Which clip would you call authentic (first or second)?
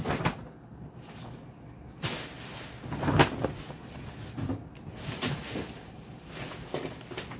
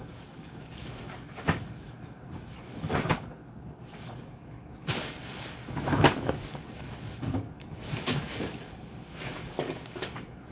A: first